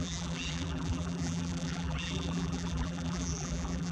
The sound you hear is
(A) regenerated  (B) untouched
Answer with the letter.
A